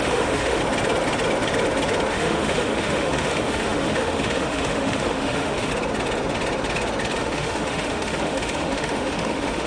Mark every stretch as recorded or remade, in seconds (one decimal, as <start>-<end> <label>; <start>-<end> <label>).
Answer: 0.0-0.6 remade; 0.6-2.1 recorded; 2.1-5.7 remade; 5.7-7.2 recorded; 7.2-9.7 remade